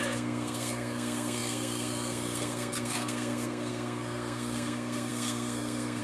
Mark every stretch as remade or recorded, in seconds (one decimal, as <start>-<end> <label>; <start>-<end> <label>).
0.0-6.0 remade